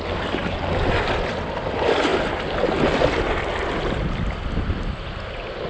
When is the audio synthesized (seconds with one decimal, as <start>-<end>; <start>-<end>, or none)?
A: 0.4-0.9